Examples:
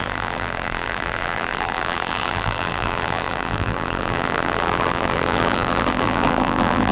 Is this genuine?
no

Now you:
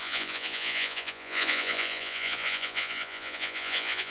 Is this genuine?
no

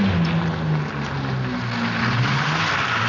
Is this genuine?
yes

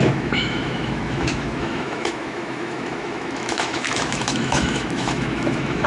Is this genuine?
no